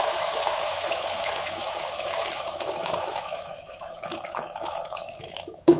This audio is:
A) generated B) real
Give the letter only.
A